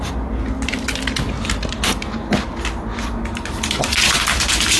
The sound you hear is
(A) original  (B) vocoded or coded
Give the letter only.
A